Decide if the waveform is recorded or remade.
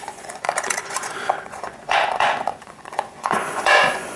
remade